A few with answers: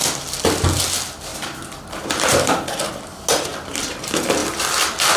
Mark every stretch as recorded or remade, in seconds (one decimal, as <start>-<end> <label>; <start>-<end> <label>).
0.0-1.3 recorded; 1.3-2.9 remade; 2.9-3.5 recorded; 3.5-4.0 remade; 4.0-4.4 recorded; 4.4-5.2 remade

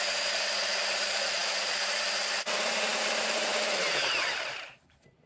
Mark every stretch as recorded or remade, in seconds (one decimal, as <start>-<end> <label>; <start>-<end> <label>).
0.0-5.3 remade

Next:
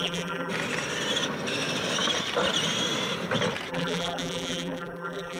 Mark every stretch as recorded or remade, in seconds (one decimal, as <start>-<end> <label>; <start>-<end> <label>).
0.0-0.5 remade; 0.5-3.7 recorded; 3.7-5.4 remade